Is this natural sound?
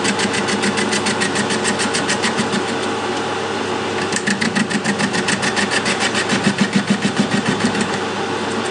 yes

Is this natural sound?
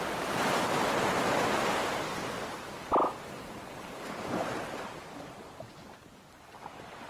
yes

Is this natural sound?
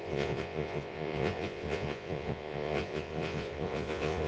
no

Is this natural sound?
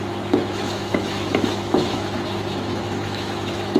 no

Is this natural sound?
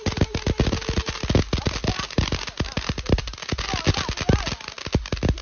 yes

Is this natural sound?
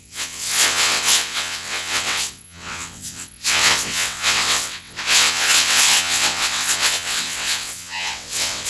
no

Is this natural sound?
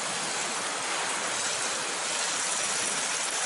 yes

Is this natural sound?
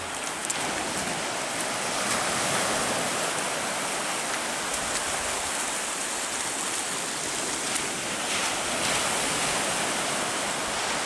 yes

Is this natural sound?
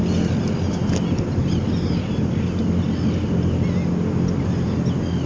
yes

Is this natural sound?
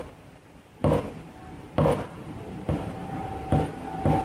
no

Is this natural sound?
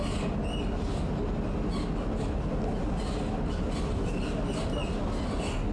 yes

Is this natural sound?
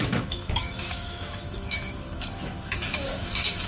no